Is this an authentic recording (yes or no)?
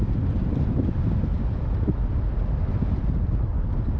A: yes